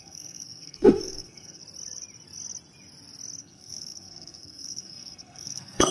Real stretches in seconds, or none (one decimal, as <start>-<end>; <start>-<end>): 1.6-3.4